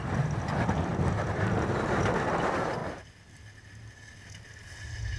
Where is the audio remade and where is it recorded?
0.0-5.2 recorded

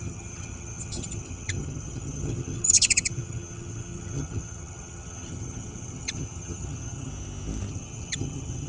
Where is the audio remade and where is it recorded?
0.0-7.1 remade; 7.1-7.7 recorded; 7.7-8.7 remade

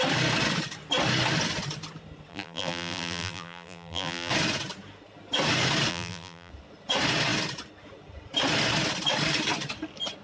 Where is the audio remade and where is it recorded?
0.0-2.3 recorded; 2.3-4.3 remade; 4.3-5.9 recorded; 5.9-6.5 remade; 6.5-10.2 recorded

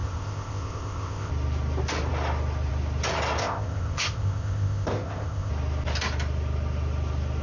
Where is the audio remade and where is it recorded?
0.0-1.3 remade; 1.3-3.4 recorded; 3.4-5.5 remade; 5.5-7.4 recorded